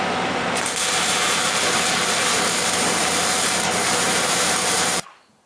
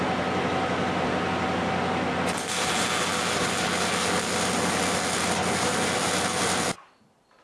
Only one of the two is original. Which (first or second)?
second